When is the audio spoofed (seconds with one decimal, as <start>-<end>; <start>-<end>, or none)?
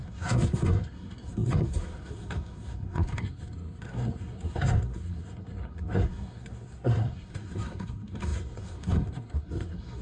0.0-10.0